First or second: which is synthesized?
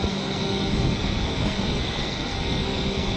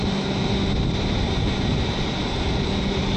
first